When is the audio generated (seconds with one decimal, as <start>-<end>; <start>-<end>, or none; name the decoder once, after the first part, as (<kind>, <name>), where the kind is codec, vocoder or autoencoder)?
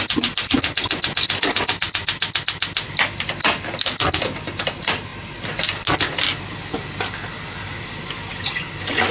none